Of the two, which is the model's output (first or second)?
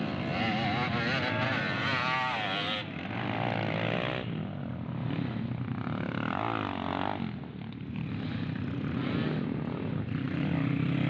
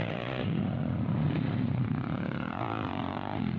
second